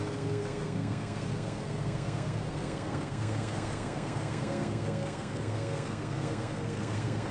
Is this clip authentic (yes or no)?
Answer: no